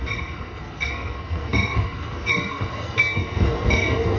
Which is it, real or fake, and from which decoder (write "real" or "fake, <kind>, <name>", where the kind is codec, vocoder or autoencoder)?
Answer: fake, codec, SNAC